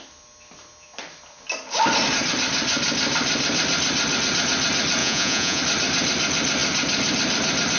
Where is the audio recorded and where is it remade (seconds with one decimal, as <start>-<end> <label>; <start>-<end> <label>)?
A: 0.0-5.0 recorded; 5.0-5.6 remade; 5.6-7.8 recorded